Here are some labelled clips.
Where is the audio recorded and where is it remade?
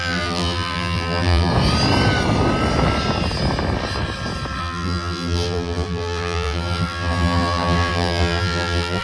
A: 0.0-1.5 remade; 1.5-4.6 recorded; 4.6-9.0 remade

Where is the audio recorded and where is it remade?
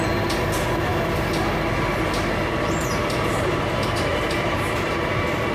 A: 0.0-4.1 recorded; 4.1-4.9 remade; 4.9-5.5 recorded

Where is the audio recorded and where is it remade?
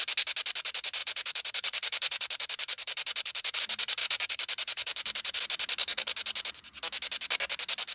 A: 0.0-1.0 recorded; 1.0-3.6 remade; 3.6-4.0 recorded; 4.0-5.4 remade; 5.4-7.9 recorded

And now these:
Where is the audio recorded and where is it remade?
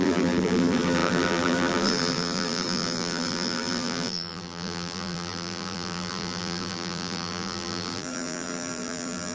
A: 0.0-9.3 remade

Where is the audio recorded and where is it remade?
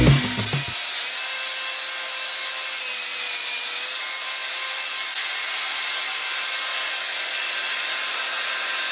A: 0.0-4.4 recorded; 4.4-5.8 remade; 5.8-8.9 recorded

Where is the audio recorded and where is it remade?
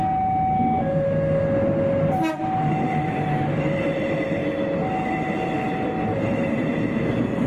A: 0.0-2.1 recorded; 2.1-4.4 remade; 4.4-6.0 recorded; 6.0-7.5 remade